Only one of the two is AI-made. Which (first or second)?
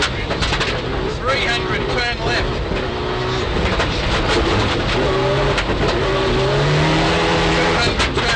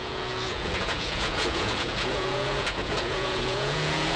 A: second